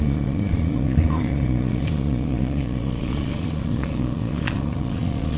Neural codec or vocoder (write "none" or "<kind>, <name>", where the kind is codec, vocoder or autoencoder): vocoder, Vocos